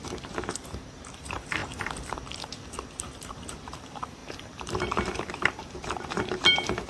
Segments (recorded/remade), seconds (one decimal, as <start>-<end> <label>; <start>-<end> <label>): 0.0-1.6 remade; 1.6-3.0 recorded; 3.0-6.9 remade